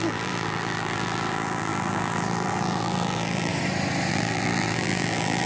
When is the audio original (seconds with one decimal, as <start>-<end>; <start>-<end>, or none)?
3.5-4.1